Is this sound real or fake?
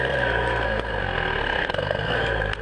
fake